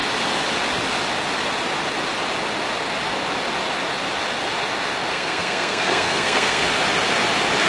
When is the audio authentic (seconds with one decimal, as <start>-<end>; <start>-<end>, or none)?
0.0-5.1; 6.6-7.7